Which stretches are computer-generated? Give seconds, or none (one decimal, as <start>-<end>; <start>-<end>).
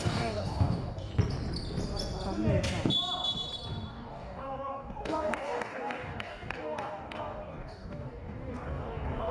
0.0-1.1; 3.9-9.3